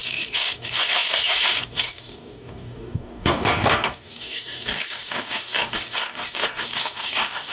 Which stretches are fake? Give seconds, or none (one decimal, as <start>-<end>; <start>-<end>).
0.0-7.5